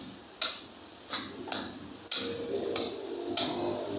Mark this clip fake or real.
real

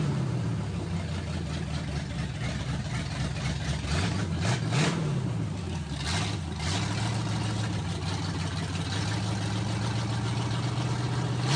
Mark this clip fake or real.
real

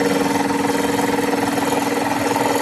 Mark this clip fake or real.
real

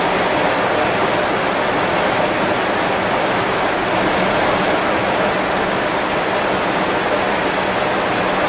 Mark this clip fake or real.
real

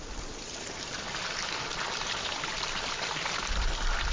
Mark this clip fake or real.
real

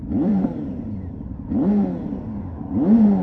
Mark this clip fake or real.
fake